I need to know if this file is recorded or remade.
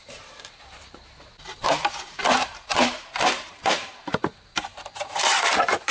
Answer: remade